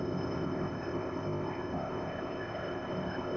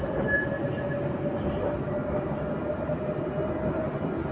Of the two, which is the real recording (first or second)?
second